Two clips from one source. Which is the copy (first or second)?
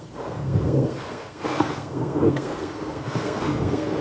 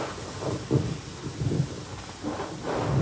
first